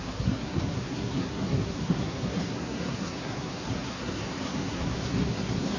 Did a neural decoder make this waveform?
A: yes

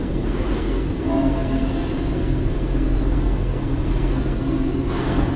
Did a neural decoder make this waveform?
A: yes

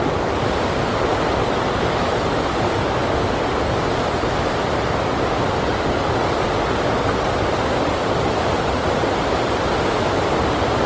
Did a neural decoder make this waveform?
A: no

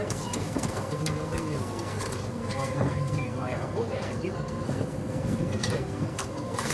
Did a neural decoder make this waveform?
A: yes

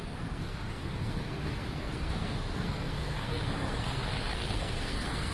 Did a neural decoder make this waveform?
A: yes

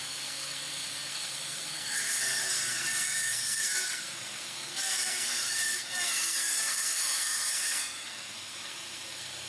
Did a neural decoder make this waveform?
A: yes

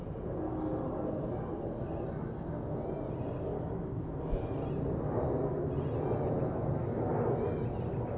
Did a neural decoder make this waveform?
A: no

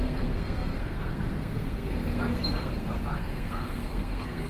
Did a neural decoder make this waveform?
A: yes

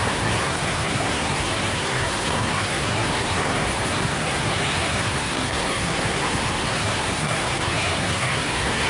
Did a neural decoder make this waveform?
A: yes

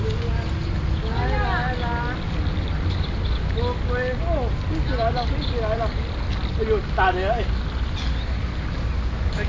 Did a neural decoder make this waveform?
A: no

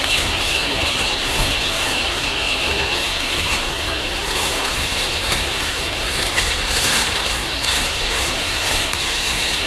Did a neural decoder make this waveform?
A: yes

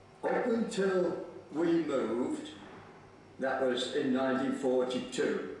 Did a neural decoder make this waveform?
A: no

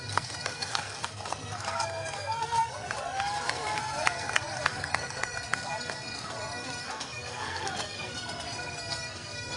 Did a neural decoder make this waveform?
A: yes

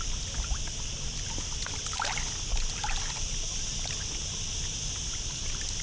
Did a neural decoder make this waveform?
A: no